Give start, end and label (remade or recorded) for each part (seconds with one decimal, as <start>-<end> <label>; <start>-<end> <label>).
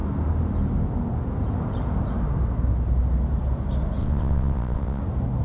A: 0.0-4.0 recorded; 4.0-5.0 remade; 5.0-5.4 recorded